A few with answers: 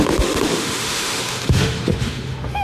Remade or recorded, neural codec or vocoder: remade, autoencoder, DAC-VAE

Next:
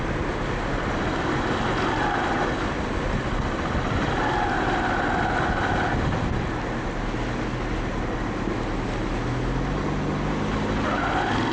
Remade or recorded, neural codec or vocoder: recorded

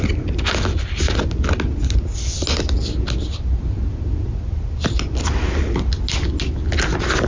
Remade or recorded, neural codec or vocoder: recorded